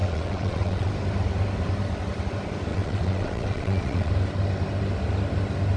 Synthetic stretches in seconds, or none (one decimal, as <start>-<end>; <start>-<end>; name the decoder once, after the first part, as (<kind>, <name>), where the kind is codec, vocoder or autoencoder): 0.0-0.9 (vocoder, WaveNeXt); 2.7-4.1